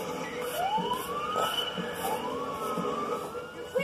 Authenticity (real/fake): real